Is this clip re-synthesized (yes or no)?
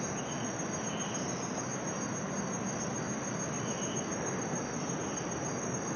no